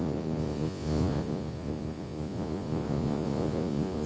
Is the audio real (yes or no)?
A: no